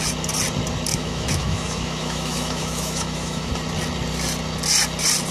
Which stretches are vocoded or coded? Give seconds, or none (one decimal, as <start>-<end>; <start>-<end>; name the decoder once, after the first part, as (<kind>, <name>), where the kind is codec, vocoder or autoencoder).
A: 0.9-3.5 (autoencoder, DAC-VAE)